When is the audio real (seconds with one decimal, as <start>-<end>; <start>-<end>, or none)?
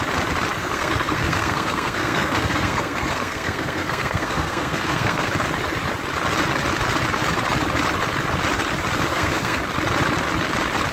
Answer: 0.0-0.6; 5.3-9.1; 9.6-10.9